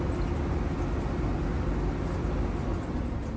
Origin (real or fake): real